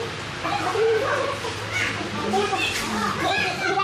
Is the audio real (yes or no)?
yes